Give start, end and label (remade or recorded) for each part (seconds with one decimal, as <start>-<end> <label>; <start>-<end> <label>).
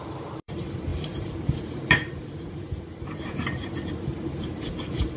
0.0-5.2 remade